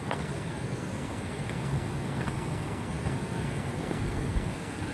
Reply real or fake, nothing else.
fake